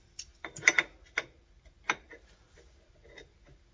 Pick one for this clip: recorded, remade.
recorded